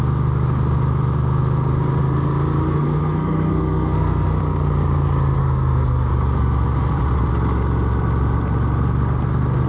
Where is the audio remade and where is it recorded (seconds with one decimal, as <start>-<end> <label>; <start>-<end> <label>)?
0.0-2.6 recorded; 2.6-4.4 remade; 4.4-5.4 recorded; 5.4-6.1 remade; 6.1-9.7 recorded